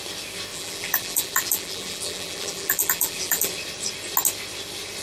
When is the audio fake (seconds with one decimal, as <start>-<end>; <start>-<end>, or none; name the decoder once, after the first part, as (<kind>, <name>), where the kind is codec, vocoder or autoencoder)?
0.5-3.5 (vocoder, BigVGAN v2)